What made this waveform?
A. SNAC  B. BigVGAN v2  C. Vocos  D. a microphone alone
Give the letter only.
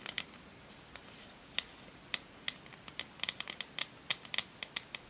D